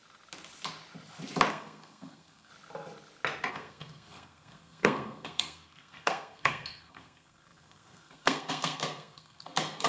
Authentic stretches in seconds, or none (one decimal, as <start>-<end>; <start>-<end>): 0.0-1.5; 2.5-3.5